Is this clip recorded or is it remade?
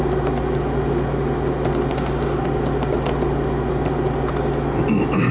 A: recorded